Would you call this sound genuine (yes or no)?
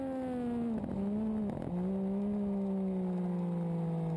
yes